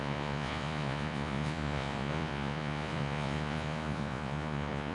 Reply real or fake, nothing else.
fake